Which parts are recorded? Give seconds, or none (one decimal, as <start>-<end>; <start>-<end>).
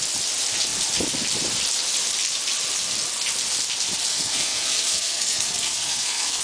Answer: 0.0-4.1